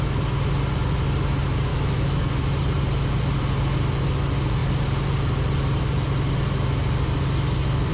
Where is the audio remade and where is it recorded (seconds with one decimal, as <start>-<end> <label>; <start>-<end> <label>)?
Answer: 0.0-1.7 recorded; 1.7-2.2 remade; 2.2-7.9 recorded